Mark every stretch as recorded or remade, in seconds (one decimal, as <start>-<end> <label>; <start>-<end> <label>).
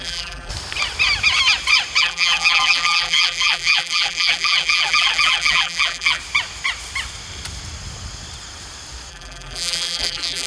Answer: 0.0-0.5 remade; 0.5-2.0 recorded; 2.0-6.2 remade; 6.2-9.1 recorded; 9.1-10.5 remade